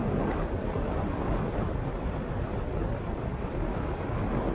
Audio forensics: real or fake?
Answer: real